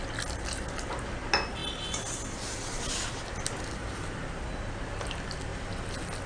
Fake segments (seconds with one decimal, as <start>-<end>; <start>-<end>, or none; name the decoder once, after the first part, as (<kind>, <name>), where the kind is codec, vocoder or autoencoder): none